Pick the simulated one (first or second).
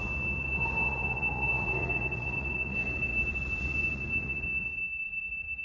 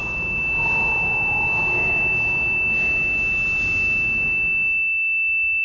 first